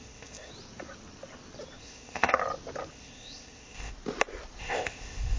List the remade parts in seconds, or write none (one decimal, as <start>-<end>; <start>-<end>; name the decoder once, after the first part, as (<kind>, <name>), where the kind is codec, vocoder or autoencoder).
0.0-0.5 (codec, ZipCodec); 1.8-2.4; 2.9-3.9; 4.6-5.4